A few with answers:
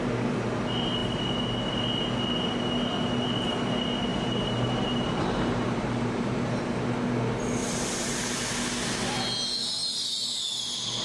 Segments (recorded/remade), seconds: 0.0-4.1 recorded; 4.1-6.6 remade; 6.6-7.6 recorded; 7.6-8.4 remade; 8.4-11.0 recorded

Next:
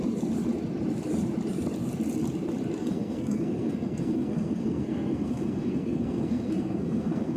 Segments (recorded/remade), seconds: 0.0-2.8 recorded; 2.8-7.4 remade

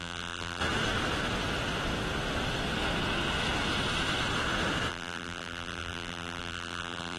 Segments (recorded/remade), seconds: 0.0-0.6 remade; 0.6-4.9 recorded; 4.9-7.2 remade

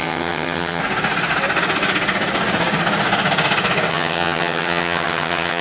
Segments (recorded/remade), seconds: 0.0-0.8 remade; 0.8-3.9 recorded; 3.9-5.6 remade